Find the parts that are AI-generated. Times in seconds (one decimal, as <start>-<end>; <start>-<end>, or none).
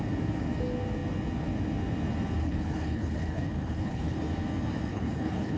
2.4-4.2; 4.9-5.6